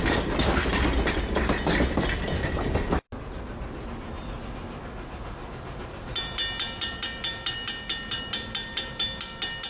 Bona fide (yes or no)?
yes